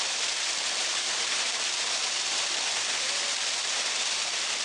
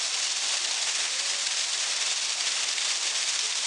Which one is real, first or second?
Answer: second